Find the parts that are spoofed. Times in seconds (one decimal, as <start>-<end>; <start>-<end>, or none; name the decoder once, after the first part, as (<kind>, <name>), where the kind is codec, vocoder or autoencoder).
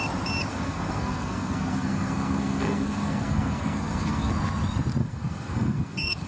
0.5-4.3 (codec, SNAC); 5.0-6.3